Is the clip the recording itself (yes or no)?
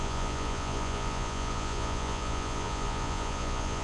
no